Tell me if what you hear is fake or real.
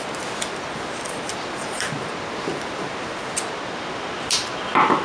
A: real